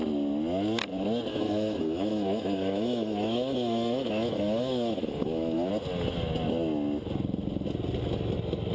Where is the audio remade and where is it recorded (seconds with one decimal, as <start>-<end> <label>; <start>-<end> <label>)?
0.0-1.3 recorded; 1.3-5.7 remade; 5.7-8.7 recorded